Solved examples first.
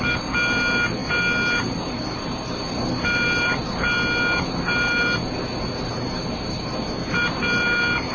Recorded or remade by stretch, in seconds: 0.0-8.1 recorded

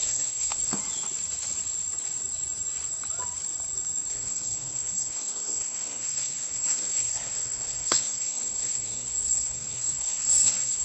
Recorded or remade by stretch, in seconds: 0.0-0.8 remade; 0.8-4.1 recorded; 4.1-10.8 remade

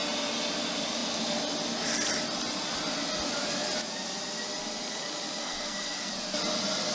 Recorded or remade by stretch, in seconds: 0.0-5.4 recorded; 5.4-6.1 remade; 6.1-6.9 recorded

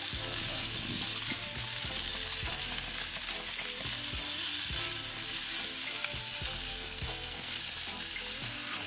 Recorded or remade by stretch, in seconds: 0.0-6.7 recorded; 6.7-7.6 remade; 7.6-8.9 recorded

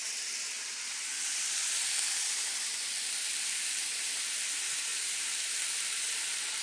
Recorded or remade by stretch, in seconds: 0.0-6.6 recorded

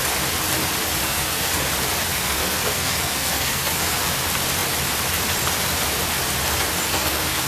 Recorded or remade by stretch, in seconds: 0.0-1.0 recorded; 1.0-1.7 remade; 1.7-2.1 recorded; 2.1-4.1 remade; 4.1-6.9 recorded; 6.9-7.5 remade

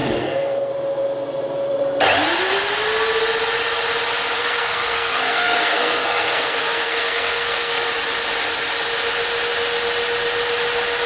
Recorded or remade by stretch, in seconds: 0.0-0.7 remade; 0.7-4.4 recorded; 4.4-7.9 remade; 7.9-11.1 recorded